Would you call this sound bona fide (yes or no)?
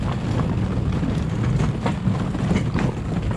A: yes